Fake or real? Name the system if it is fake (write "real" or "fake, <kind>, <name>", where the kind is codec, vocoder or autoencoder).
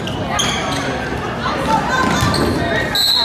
real